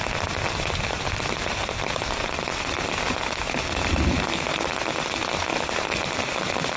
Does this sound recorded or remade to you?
recorded